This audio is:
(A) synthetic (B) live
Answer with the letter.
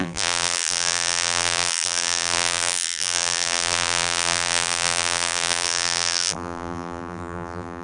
A